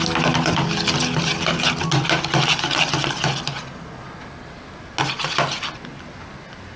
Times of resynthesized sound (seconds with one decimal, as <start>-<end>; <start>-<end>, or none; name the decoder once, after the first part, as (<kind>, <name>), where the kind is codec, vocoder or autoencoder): none